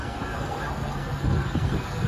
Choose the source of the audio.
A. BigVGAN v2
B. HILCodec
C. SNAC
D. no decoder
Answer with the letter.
C